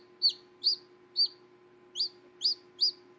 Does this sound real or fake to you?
real